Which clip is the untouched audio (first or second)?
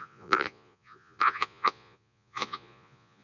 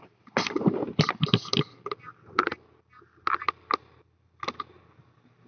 second